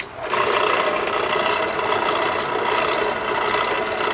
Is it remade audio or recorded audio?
recorded